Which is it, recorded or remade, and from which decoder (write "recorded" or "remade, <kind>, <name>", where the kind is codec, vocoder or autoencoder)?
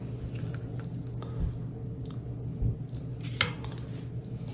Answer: recorded